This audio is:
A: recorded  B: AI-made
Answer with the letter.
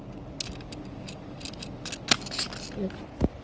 A